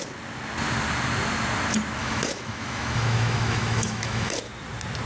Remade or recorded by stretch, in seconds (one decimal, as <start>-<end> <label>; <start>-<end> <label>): 0.0-2.0 recorded; 2.0-4.4 remade; 4.4-5.1 recorded